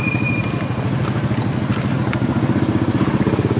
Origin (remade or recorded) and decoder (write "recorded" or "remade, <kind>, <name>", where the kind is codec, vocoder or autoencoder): recorded